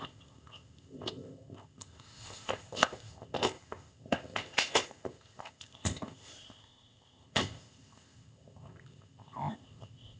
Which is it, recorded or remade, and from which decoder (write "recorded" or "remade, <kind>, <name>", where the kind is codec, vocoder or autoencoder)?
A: remade, codec, ZipCodec